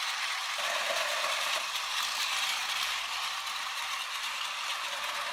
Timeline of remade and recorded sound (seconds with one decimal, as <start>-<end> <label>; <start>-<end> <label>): 0.0-5.3 recorded